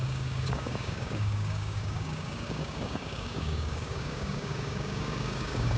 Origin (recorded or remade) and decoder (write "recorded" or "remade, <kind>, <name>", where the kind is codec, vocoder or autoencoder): remade, codec, DAC